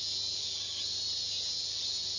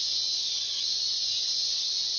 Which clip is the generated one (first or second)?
second